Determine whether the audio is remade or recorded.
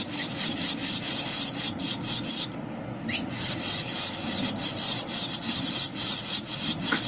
recorded